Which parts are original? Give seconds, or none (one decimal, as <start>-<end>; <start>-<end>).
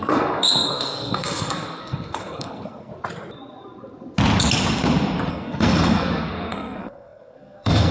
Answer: 2.9-5.3